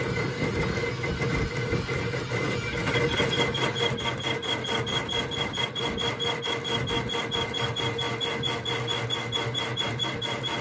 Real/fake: real